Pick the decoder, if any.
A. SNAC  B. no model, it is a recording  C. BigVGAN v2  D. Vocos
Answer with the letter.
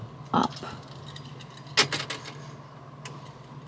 B